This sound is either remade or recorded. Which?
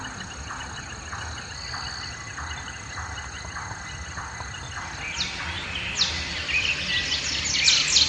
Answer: recorded